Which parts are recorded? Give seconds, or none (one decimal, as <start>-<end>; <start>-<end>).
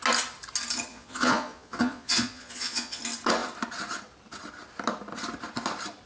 0.0-0.9; 3.0-6.1